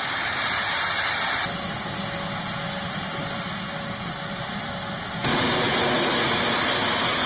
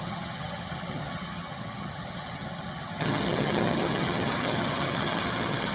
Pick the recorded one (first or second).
first